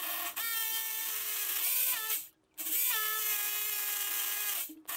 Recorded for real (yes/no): yes